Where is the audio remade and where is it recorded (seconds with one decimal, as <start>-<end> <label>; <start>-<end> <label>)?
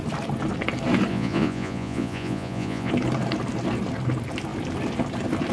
0.0-1.1 recorded; 1.1-2.9 remade; 2.9-5.5 recorded